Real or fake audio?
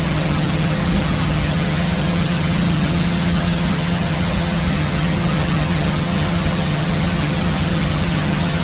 fake